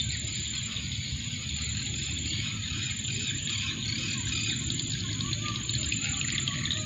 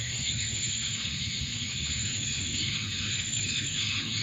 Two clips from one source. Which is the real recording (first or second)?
first